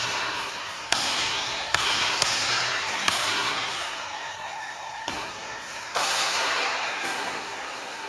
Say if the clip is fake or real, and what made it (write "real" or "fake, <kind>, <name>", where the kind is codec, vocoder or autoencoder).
fake, codec, SNAC